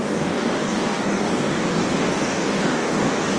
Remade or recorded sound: remade